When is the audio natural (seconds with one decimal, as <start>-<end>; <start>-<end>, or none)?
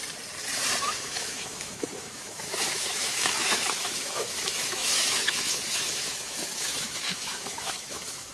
0.0-0.8